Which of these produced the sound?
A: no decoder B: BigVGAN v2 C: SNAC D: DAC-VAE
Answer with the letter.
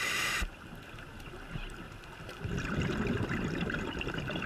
B